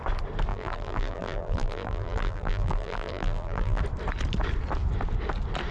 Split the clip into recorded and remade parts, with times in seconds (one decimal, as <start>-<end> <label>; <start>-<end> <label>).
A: 0.0-0.5 recorded; 0.5-3.8 remade; 3.8-5.7 recorded

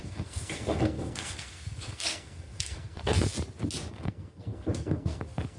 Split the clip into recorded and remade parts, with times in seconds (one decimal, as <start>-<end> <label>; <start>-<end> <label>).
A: 0.0-3.3 remade; 3.3-3.9 recorded; 3.9-5.6 remade

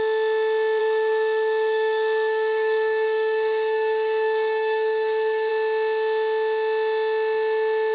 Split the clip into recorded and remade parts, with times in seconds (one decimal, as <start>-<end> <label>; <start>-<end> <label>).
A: 0.0-0.8 recorded; 0.8-5.5 remade; 5.5-7.9 recorded

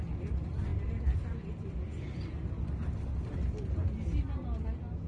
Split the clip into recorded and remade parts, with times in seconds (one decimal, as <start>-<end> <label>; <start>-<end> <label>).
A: 0.0-5.1 recorded

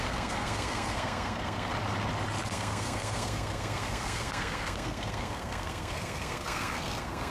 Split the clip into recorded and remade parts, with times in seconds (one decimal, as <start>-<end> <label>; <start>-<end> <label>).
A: 0.0-1.7 remade; 1.7-2.5 recorded; 2.5-7.3 remade

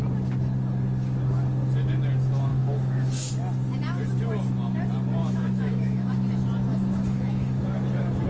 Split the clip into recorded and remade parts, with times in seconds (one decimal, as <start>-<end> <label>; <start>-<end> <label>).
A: 0.0-2.5 recorded; 2.5-3.3 remade; 3.3-5.2 recorded; 5.2-6.3 remade; 6.3-6.7 recorded; 6.7-7.6 remade; 7.6-8.3 recorded

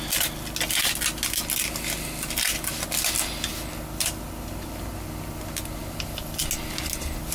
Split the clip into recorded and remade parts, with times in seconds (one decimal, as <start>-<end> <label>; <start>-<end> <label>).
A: 0.0-7.3 recorded